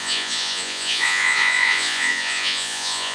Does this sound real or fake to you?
fake